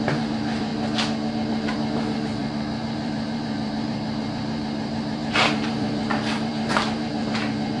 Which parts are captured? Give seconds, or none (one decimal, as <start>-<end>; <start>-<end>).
0.7-1.3